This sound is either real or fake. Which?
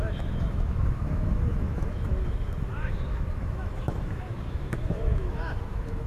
fake